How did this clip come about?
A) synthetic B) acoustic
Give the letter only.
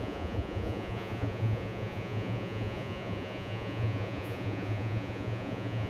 A